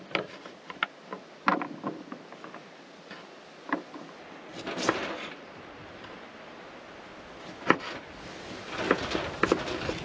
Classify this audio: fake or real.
real